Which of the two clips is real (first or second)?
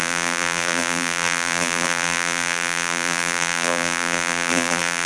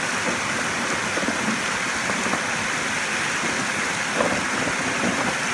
second